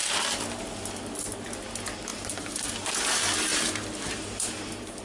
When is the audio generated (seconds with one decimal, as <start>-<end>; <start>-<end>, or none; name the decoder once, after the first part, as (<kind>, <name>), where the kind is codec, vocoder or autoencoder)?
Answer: 2.1-2.6 (vocoder, BigVGAN v2); 3.5-5.0